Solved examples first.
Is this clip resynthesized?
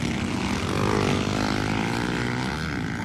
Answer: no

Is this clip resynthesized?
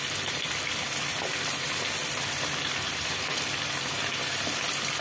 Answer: no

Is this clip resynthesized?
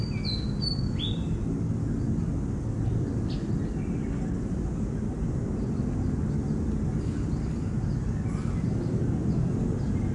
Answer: no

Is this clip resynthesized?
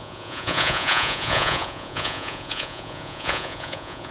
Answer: yes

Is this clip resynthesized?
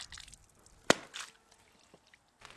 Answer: no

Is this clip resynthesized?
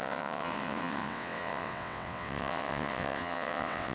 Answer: yes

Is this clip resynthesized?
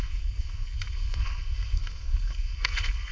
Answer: yes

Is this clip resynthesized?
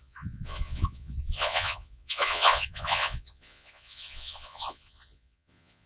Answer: yes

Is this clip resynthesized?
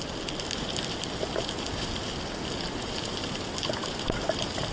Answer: no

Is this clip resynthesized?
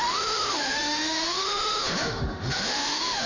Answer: yes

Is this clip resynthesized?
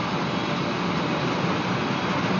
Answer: no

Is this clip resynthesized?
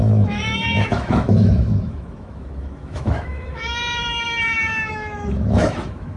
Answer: yes